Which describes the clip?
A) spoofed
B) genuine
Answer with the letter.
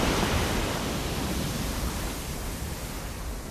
A